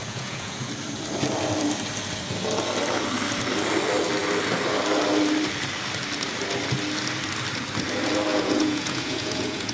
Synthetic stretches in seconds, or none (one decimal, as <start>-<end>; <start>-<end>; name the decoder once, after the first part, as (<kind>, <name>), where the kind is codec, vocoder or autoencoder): 0.0-0.7 (vocoder, Vocos); 8.3-9.7